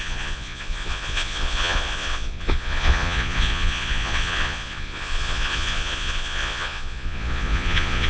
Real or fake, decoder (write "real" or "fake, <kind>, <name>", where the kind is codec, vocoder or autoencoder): fake, vocoder, Vocos